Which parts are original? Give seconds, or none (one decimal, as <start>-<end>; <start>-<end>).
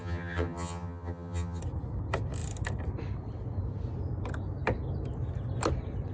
1.6-6.1